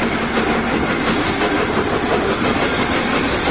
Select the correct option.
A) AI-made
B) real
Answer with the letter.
B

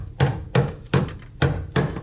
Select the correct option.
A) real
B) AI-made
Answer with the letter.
B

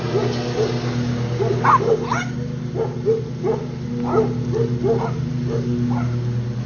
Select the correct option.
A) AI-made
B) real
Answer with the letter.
B